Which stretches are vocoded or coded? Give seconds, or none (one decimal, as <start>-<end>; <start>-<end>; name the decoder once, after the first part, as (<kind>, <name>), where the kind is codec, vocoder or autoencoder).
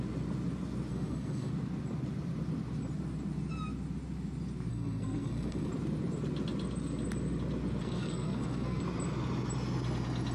0.9-1.5 (codec, SNAC); 4.7-5.7; 7.8-8.8